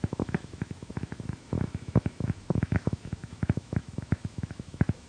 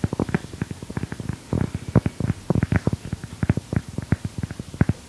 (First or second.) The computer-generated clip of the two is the first